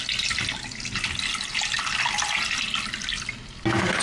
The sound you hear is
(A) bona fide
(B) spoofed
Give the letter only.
A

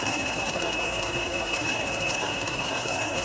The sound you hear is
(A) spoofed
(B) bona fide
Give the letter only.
A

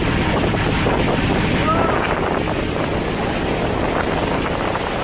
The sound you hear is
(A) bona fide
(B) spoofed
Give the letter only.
A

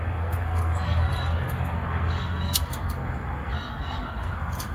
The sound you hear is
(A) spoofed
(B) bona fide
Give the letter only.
A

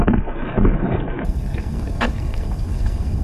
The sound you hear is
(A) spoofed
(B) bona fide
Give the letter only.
A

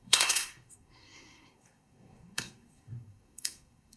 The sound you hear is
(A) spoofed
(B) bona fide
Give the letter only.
A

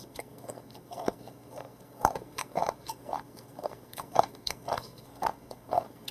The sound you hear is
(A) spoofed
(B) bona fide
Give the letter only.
A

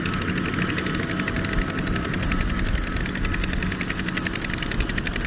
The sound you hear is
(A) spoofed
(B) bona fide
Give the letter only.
B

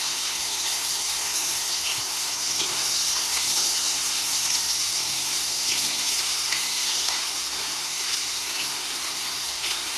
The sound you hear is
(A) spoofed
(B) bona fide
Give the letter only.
A